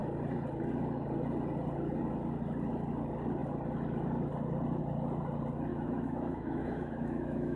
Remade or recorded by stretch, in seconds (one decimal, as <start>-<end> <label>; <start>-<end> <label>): 0.0-5.7 recorded; 5.7-7.6 remade